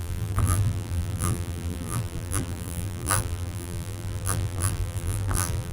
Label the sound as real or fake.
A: fake